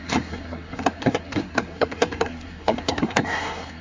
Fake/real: fake